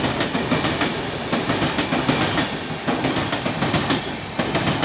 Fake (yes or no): no